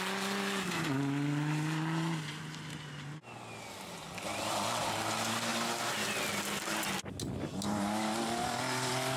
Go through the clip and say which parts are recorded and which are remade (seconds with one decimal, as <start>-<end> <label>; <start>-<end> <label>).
0.0-9.2 recorded